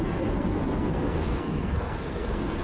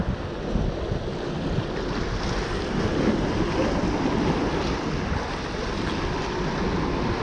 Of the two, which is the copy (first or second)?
first